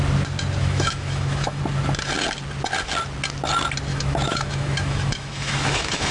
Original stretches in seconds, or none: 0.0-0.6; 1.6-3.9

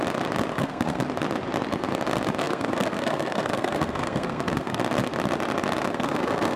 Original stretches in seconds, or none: 0.0-0.5; 1.0-2.4; 4.8-5.9

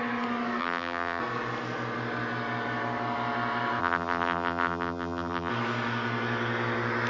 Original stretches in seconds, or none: 0.0-0.6; 1.2-3.8; 5.5-7.1

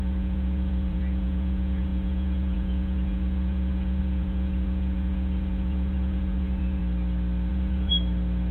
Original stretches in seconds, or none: 6.8-7.5; 7.9-8.5

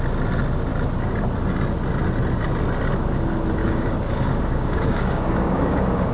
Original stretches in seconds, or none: 0.0-3.6

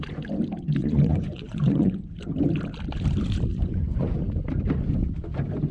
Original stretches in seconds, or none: 0.0-0.8; 2.1-3.5; 4.2-5.7